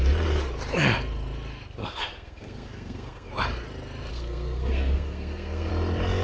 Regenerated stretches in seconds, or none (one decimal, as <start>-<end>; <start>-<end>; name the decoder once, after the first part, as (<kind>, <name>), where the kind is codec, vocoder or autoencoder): 1.8-3.3 (codec, SNAC); 4.1-5.7